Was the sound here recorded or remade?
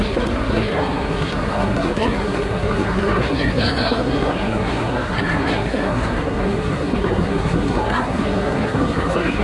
remade